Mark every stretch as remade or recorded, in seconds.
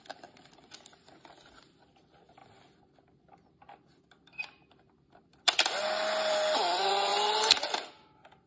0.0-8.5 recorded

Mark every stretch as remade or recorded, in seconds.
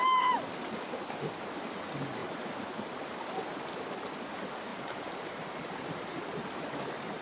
0.0-4.7 recorded; 4.7-6.2 remade; 6.2-7.2 recorded